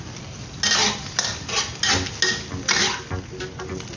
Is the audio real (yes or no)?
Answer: yes